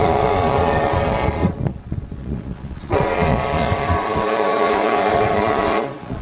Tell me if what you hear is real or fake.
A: fake